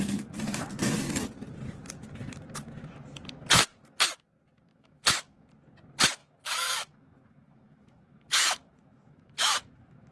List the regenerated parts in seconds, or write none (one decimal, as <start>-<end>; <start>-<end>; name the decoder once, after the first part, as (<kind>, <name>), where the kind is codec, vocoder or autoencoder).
4.7-5.5 (autoencoder, DAC-VAE); 6.2-10.1